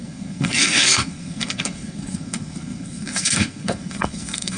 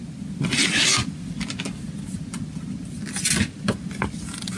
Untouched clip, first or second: second